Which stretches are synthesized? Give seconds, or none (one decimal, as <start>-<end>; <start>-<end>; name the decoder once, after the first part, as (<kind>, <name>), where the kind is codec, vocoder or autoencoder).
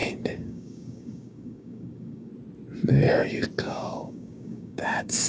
0.0-2.3 (codec, DAC); 3.6-5.3